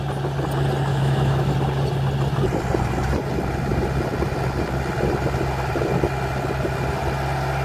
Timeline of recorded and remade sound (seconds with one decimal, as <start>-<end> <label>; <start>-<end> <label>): 0.0-0.9 recorded; 0.9-1.5 remade; 1.5-7.6 recorded